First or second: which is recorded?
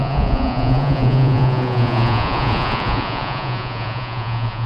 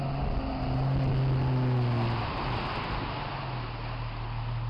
second